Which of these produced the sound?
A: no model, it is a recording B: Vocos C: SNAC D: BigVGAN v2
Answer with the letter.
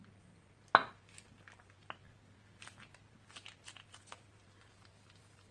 A